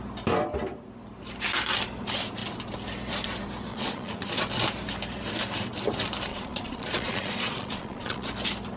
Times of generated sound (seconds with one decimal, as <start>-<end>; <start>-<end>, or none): 3.7-4.4; 6.3-8.3